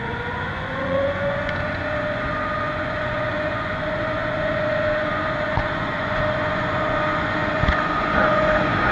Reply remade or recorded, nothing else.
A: remade